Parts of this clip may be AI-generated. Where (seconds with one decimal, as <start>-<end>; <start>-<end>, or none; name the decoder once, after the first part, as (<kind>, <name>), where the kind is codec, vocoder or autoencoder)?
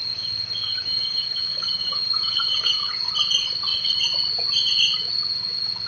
0.0-3.1 (codec, DAC)